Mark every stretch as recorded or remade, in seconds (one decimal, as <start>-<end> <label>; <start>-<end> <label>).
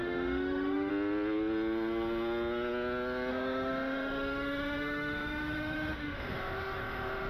0.0-0.9 remade; 0.9-3.3 recorded; 3.3-7.3 remade